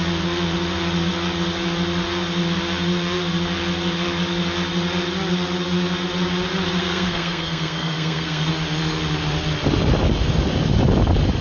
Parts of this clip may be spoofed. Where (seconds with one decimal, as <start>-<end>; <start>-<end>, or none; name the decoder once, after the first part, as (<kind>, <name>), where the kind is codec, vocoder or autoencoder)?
6.8-8.5 (codec, SNAC)